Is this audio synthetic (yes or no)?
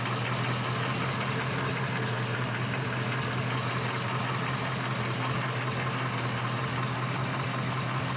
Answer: no